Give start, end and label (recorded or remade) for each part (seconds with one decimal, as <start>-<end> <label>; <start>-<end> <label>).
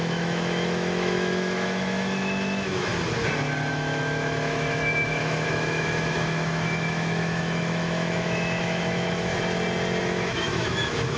0.0-2.9 remade; 2.9-3.7 recorded; 3.7-9.3 remade; 9.3-10.0 recorded; 10.0-11.2 remade